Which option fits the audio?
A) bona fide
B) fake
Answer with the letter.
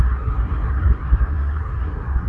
B